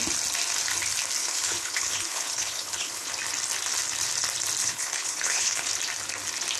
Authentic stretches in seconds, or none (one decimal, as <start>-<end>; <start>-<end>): 0.0-1.2; 3.1-4.6; 5.7-6.6

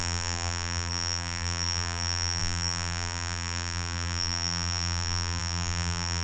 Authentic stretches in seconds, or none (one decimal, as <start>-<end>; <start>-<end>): none